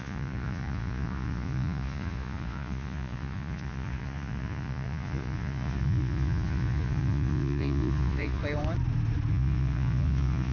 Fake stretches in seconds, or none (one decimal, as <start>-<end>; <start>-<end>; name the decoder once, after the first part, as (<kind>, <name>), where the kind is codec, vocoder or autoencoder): 0.0-8.4 (vocoder, Vocos); 9.3-10.5